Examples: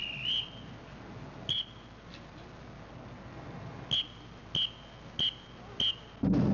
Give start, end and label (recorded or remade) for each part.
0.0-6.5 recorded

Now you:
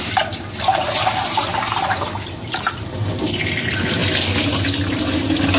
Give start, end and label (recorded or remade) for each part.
0.0-5.6 recorded

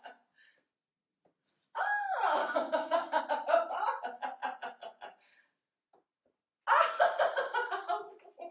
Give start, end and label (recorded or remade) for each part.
0.0-2.4 recorded; 2.4-3.2 remade; 3.2-8.5 recorded

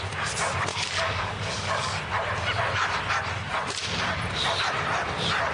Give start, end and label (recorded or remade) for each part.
0.0-0.7 recorded; 0.7-2.0 remade; 2.0-5.5 recorded

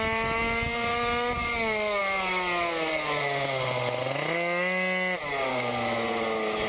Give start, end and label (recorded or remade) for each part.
0.0-6.7 recorded

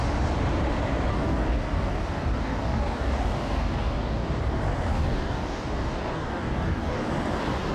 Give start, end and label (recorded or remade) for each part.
0.0-1.1 recorded; 1.1-4.4 remade; 4.4-4.9 recorded; 4.9-7.1 remade; 7.1-7.7 recorded

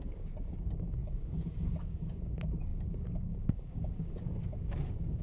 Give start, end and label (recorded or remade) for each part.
0.0-5.2 remade